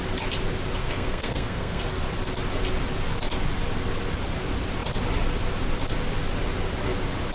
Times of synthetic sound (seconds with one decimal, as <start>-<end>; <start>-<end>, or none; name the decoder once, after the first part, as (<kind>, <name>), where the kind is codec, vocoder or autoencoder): 0.8-1.8 (codec, SNAC)